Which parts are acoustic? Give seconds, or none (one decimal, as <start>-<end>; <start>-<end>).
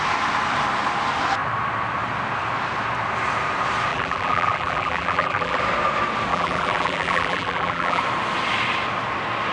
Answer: 0.0-3.9; 5.6-6.3; 8.0-9.5